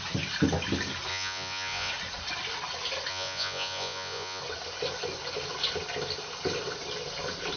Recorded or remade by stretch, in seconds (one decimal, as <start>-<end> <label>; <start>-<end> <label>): 0.0-1.1 recorded; 1.1-1.9 remade; 1.9-3.1 recorded; 3.1-4.4 remade; 4.4-7.6 recorded